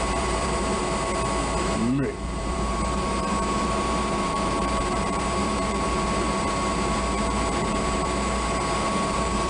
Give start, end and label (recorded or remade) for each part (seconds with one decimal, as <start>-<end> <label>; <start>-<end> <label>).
0.0-0.8 remade; 0.8-1.6 recorded; 1.6-9.5 remade